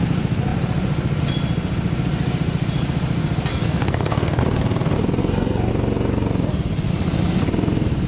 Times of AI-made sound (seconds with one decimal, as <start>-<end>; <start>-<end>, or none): 3.5-4.4; 5.2-5.7